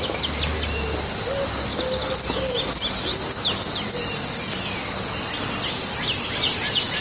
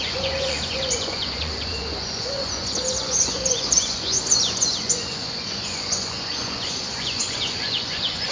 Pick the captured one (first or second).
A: first